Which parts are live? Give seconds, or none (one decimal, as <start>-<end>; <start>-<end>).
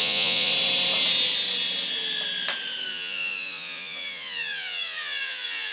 0.5-2.9